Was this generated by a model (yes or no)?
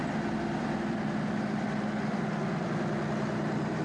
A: no